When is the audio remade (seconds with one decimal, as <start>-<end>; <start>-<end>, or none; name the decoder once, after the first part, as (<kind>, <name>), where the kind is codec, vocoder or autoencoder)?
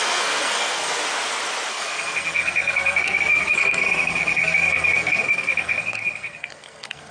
0.0-1.0 (codec, SNAC); 1.7-7.1